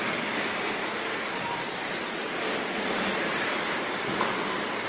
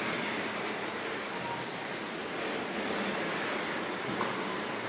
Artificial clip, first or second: first